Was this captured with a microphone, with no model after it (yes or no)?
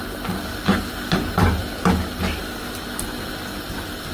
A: yes